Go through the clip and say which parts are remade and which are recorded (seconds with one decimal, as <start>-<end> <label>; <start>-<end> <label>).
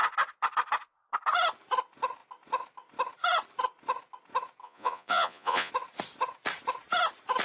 0.0-4.6 recorded; 4.6-5.7 remade; 5.7-7.4 recorded